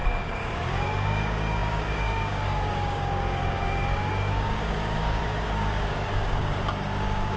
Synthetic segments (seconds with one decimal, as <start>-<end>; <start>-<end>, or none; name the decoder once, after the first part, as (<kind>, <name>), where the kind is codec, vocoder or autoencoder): 0.0-7.4 (codec, DAC)